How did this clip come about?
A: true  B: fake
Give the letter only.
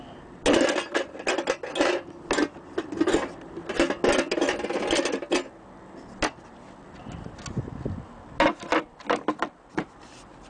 A